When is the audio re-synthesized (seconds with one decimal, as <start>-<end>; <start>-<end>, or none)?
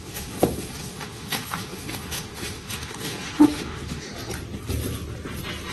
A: 0.0-4.1